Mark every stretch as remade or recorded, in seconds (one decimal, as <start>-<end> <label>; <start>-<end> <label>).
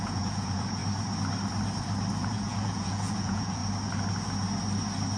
0.0-0.8 remade; 0.8-2.3 recorded; 2.3-3.6 remade; 3.6-5.2 recorded